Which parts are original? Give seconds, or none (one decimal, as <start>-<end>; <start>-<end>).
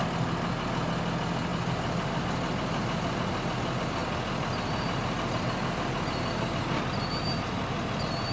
0.0-8.3